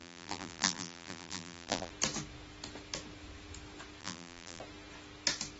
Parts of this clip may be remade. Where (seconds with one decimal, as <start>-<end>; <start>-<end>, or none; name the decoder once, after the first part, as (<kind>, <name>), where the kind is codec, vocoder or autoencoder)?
0.0-1.9 (vocoder, BigVGAN v2); 4.0-4.6